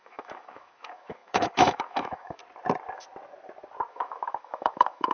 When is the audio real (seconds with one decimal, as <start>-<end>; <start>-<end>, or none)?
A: 2.4-3.9